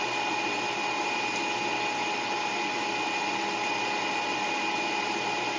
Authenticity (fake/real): real